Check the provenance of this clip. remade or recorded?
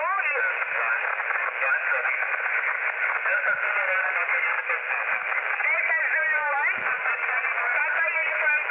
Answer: recorded